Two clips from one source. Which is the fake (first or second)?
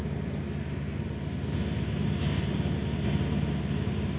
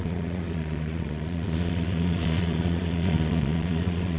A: second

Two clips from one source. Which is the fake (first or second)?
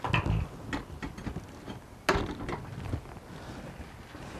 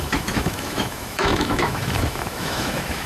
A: second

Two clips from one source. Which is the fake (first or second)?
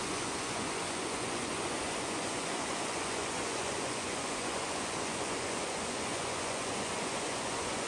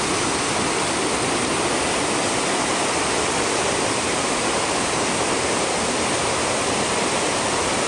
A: first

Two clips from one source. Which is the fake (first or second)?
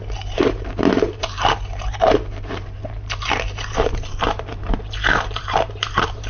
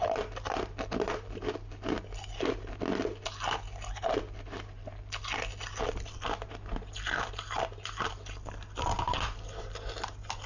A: first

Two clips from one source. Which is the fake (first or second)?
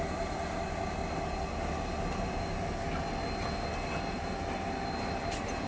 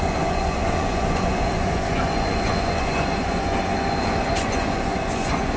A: second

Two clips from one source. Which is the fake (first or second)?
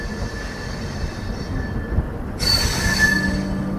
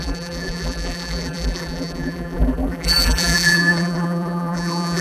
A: second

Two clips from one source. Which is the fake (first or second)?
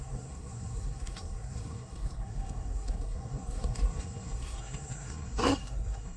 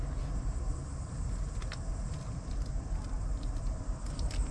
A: first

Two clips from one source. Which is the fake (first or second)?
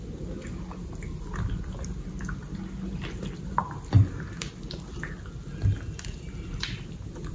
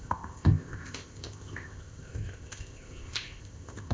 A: second